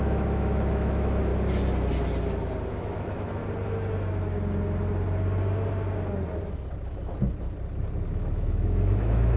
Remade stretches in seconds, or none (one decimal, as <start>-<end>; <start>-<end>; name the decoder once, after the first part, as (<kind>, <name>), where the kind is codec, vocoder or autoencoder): 0.0-1.3 (autoencoder, DAC-VAE); 2.6-3.4; 8.1-9.4